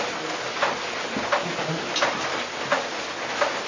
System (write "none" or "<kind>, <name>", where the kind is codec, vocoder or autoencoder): none